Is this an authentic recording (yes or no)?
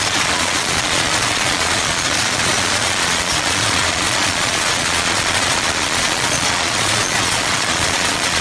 no